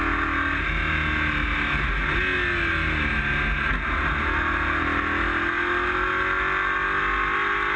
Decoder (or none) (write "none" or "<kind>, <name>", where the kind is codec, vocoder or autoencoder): none